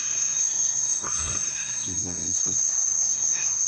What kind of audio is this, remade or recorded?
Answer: remade